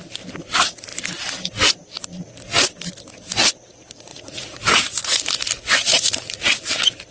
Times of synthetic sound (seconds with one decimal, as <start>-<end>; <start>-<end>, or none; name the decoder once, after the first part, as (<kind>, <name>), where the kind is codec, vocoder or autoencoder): 4.1-5.2 (vocoder, Vocos); 5.9-6.5